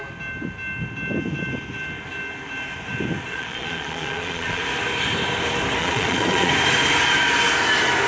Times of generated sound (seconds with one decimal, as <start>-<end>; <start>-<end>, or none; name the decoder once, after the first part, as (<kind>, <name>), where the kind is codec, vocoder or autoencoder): 3.3-4.6 (vocoder, Vocos); 5.8-6.5